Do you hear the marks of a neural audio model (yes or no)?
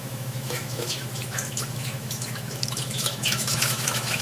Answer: yes